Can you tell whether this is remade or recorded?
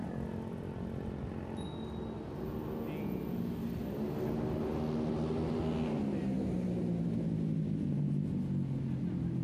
recorded